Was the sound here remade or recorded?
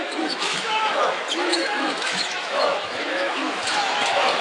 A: remade